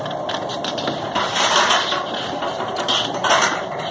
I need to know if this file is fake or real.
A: fake